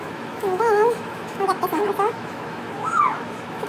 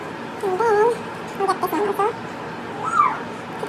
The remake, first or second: first